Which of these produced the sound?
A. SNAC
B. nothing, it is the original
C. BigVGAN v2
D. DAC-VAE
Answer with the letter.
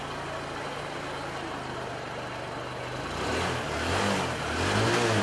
B